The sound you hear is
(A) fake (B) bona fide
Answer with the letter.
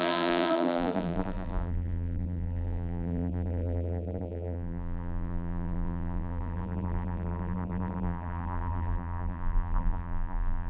A